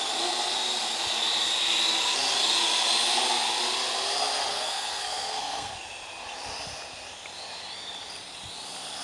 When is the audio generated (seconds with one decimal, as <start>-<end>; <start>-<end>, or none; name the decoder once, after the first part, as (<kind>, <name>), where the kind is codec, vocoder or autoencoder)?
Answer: 4.5-5.7 (codec, SNAC)